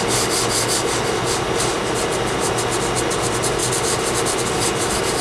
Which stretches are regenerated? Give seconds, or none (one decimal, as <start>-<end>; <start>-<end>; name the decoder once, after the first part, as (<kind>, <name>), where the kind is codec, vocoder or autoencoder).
none